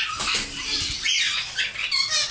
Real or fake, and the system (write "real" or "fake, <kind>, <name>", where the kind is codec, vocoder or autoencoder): real